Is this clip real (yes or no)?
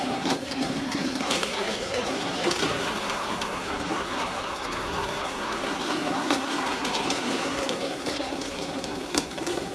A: no